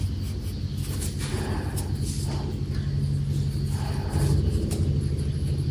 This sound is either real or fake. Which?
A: real